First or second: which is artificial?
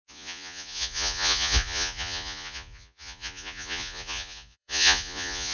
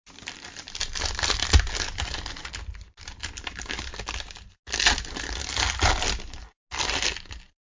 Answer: first